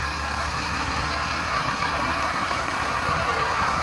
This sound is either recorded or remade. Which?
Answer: remade